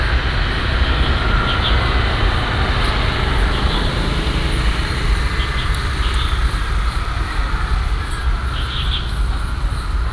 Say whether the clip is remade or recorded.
recorded